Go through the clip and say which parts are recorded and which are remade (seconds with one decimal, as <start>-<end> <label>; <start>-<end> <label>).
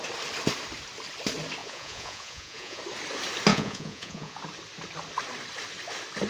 0.0-1.6 recorded; 1.6-2.8 remade; 2.8-3.5 recorded; 3.5-4.4 remade; 4.4-6.3 recorded